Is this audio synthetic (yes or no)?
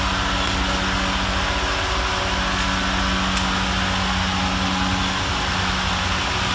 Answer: no